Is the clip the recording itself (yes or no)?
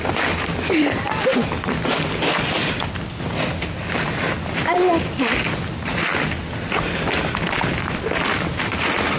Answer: yes